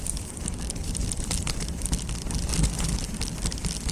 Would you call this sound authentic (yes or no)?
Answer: yes